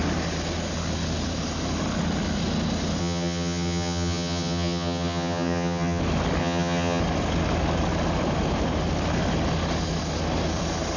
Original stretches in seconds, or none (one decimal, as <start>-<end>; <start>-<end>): 0.0-3.0; 6.0-6.4; 7.0-11.0